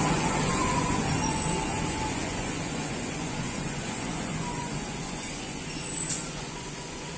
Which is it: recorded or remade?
remade